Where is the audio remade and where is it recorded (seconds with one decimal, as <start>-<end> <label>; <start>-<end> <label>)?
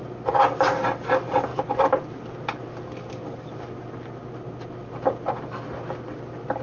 0.0-6.6 recorded